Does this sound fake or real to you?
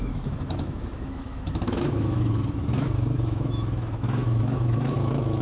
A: fake